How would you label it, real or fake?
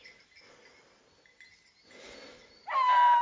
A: real